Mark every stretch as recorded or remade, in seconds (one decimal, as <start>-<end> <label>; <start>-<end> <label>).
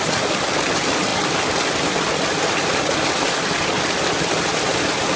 0.0-5.2 recorded